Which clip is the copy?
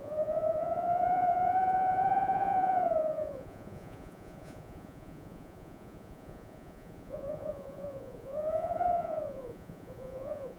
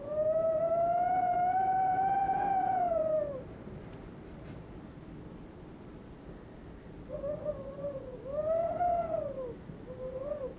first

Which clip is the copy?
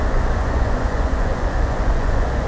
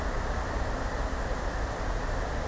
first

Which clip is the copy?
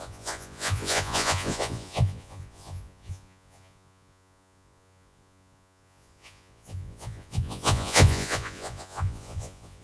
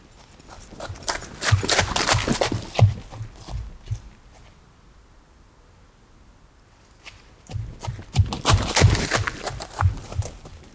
first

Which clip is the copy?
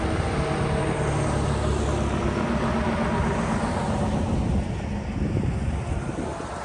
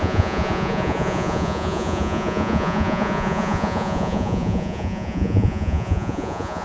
second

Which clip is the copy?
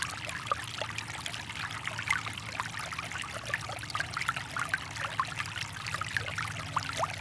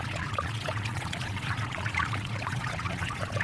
second